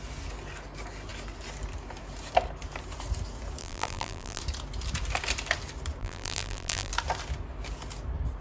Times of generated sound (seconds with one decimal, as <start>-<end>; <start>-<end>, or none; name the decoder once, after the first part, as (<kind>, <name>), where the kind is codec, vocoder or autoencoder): 3.6-4.4 (vocoder, BigVGAN v2); 6.0-6.9